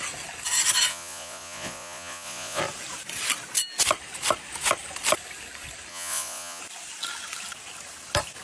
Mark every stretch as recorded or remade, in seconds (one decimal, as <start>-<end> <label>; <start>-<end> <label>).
0.0-0.9 recorded; 0.9-2.6 remade; 2.6-5.9 recorded; 5.9-6.6 remade; 6.6-8.4 recorded